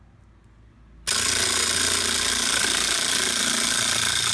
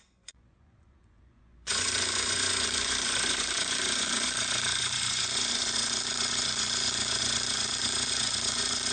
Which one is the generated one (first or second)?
second